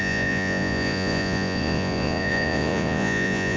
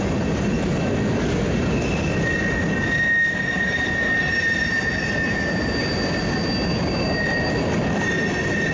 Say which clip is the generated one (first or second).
first